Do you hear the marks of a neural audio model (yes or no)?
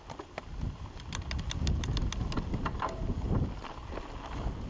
no